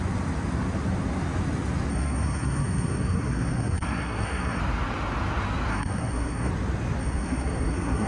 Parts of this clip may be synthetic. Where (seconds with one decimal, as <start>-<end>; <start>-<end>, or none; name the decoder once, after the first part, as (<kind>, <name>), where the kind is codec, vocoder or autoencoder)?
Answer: 1.9-4.6 (codec, SNAC); 5.7-6.5; 7.0-8.1